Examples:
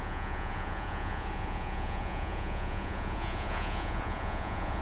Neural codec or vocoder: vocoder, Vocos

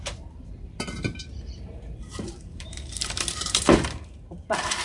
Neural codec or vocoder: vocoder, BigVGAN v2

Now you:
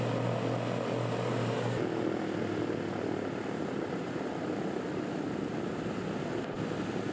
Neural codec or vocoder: none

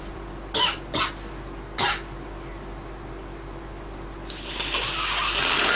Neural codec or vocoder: none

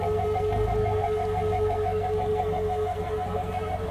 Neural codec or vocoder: codec, SNAC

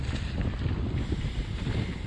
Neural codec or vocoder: none